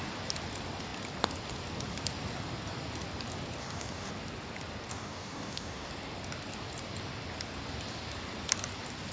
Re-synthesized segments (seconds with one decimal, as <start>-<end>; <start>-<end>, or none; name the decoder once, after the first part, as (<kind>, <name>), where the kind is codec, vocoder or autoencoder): 3.6-4.1 (codec, DAC); 4.9-5.9